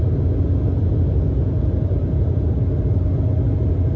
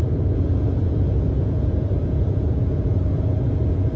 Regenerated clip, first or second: second